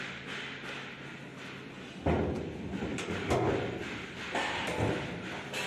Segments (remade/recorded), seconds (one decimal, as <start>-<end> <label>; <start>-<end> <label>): 0.0-2.9 recorded; 2.9-3.5 remade; 3.5-5.7 recorded